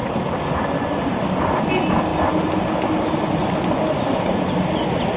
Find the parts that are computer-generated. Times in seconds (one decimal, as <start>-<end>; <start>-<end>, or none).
none